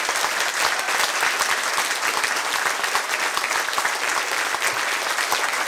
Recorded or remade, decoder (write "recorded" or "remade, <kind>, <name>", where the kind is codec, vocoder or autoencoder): recorded